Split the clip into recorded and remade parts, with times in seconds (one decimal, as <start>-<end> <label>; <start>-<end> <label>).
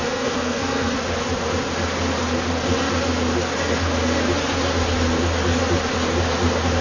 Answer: 0.0-0.9 remade; 0.9-6.8 recorded